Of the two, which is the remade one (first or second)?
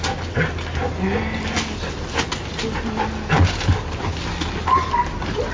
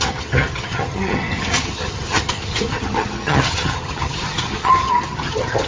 second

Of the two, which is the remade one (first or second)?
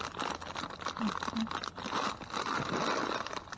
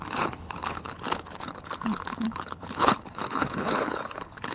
second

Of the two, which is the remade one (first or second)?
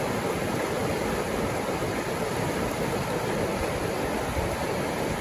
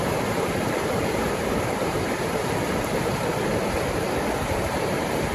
second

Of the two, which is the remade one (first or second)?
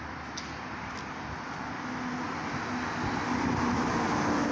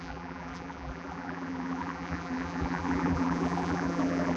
second